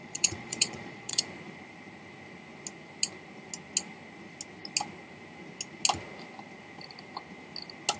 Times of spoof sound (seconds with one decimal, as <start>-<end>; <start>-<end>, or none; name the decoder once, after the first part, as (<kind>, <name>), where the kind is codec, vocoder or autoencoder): 0.0-1.2 (vocoder, Vocos)